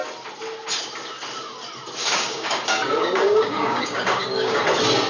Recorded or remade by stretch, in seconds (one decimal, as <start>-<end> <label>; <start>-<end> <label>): 0.0-2.0 recorded; 2.0-4.6 remade; 4.6-5.1 recorded